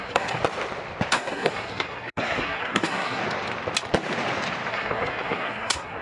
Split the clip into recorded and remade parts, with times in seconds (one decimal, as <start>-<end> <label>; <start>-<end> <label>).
0.0-0.4 remade; 0.4-1.1 recorded; 1.1-3.2 remade; 3.2-4.7 recorded; 4.7-6.0 remade